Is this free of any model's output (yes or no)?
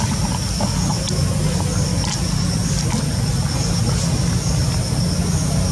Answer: yes